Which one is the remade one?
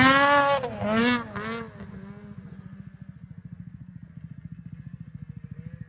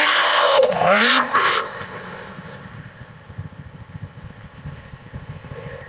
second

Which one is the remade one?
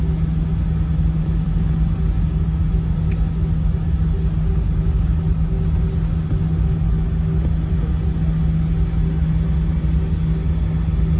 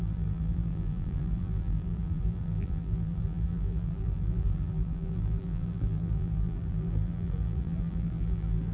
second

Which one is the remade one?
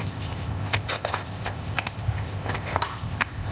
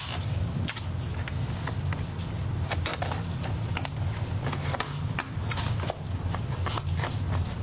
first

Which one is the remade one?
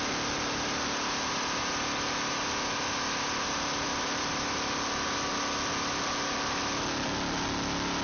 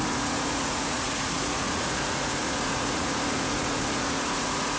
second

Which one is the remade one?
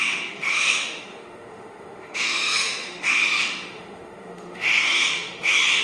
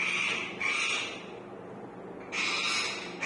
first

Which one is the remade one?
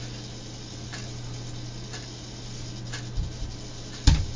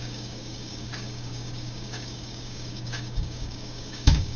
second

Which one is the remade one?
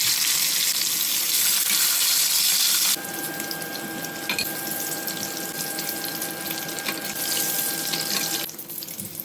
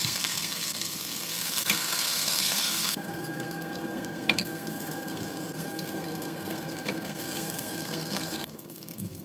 second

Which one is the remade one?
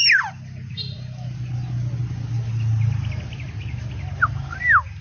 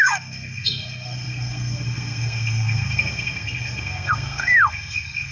second